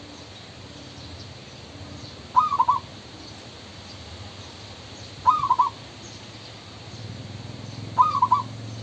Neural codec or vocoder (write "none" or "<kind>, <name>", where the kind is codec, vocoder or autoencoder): none